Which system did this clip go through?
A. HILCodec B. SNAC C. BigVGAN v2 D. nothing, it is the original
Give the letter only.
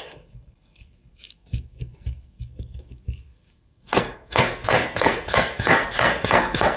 B